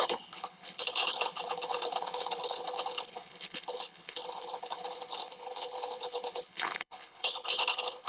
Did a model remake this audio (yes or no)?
yes